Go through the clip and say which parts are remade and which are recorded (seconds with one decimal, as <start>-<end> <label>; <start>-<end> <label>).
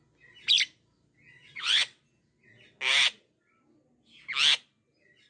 0.0-1.3 recorded; 1.3-2.0 remade; 2.0-5.3 recorded